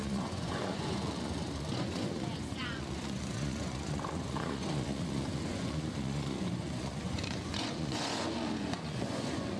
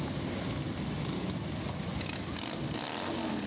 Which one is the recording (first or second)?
second